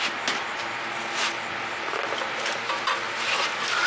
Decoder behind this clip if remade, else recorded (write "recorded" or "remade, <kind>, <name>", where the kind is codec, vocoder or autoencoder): recorded